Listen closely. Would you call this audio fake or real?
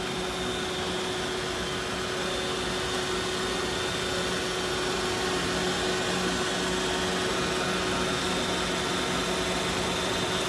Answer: real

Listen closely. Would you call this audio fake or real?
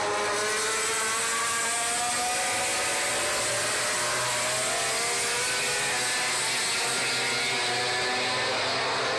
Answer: real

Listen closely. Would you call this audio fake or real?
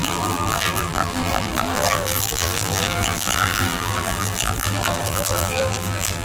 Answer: fake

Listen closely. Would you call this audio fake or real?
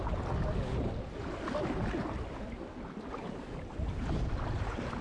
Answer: real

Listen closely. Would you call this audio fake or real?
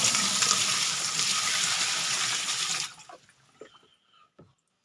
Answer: real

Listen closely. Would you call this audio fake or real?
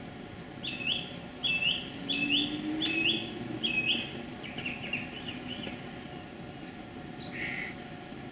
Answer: real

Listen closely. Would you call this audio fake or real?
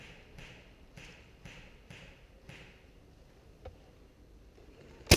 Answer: real